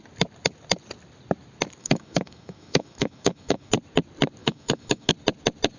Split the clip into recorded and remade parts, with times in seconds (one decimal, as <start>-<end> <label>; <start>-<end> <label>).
0.0-1.8 recorded; 1.8-3.7 remade; 3.7-4.4 recorded; 4.4-5.1 remade; 5.1-5.8 recorded